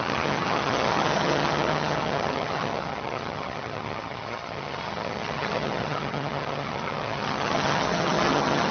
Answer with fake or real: fake